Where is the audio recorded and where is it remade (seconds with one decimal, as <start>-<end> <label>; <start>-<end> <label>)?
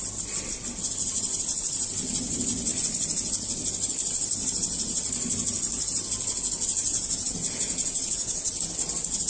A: 0.0-6.9 recorded; 6.9-8.5 remade; 8.5-9.3 recorded